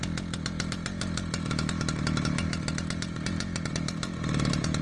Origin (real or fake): real